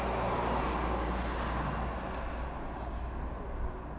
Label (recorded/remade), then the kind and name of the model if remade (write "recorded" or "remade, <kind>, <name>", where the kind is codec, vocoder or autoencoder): recorded